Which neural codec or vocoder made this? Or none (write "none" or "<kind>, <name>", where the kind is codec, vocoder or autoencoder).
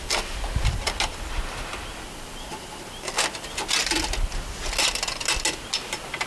none